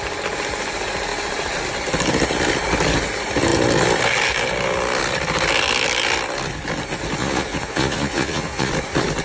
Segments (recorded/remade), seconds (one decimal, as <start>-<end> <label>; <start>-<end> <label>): 0.0-7.2 recorded; 7.2-8.7 remade; 8.7-9.2 recorded